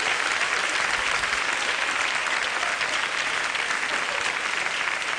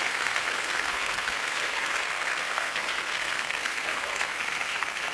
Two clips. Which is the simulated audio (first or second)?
second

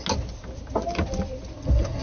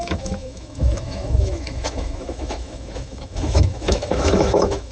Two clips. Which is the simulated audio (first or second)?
second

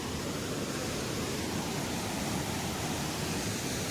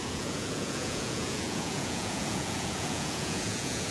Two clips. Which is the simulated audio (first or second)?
second